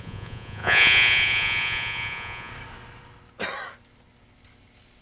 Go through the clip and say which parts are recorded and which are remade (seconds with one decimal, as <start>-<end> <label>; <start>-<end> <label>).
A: 0.0-2.5 remade; 2.5-5.0 recorded